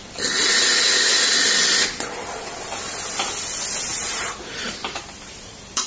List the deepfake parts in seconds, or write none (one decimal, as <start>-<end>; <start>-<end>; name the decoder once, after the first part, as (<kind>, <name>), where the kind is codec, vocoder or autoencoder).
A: 3.9-5.9 (vocoder, BigVGAN v2)